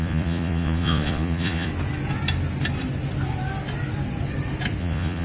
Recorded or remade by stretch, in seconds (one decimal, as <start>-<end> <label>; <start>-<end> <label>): 0.0-1.7 remade; 1.7-4.8 recorded; 4.8-5.2 remade